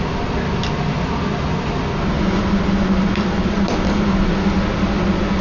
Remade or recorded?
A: recorded